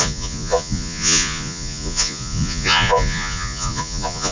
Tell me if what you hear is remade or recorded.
remade